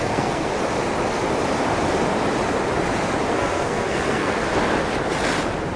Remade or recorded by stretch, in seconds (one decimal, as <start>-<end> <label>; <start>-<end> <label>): 0.0-0.5 remade; 0.5-3.3 recorded; 3.3-4.4 remade; 4.4-5.8 recorded